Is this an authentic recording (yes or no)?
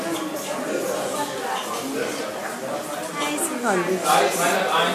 yes